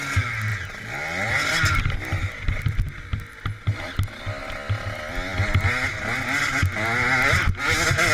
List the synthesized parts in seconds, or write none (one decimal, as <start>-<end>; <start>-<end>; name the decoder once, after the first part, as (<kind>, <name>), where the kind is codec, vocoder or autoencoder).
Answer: none